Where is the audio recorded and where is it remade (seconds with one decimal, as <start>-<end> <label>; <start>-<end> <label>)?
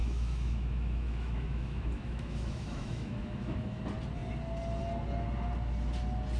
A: 0.0-3.8 remade; 3.8-6.4 recorded